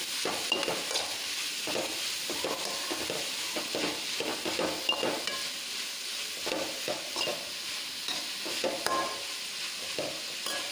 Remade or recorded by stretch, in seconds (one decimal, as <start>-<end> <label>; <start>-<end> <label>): 0.0-10.7 recorded

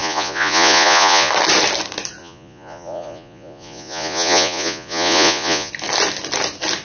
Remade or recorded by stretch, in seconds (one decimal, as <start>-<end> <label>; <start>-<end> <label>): 0.0-1.3 remade; 1.3-2.2 recorded; 2.2-5.7 remade; 5.7-6.8 recorded

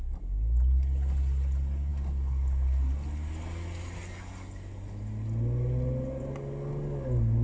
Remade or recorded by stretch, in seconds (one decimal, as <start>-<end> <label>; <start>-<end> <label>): 0.0-7.4 recorded

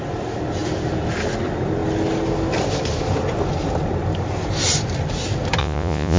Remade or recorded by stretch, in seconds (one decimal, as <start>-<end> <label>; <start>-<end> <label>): 0.0-5.6 recorded; 5.6-6.2 remade

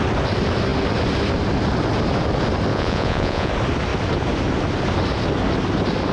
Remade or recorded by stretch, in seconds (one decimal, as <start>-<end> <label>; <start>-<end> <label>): 0.0-2.7 recorded; 2.7-3.5 remade; 3.5-6.1 recorded

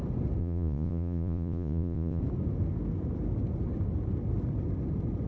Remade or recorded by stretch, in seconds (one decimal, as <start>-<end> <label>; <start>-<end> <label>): 0.0-0.4 recorded; 0.4-2.2 remade; 2.2-5.3 recorded

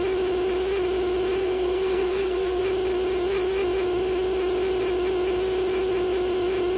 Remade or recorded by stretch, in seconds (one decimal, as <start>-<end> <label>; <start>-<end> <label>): 0.0-1.4 recorded; 1.4-2.6 remade; 2.6-6.8 recorded